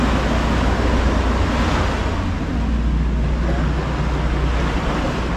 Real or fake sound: real